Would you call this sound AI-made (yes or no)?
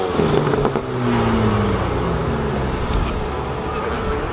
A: no